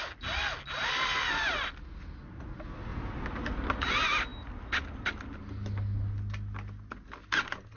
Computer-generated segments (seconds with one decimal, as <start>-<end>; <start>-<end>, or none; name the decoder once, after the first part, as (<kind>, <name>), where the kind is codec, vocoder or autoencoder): none